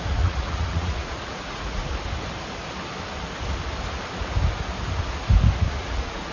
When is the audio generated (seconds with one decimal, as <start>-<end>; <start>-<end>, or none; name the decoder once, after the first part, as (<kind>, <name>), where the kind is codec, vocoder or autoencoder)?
0.0-1.8 (vocoder, Vocos); 5.6-6.3